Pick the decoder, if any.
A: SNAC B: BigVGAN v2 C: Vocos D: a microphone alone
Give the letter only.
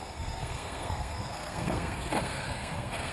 A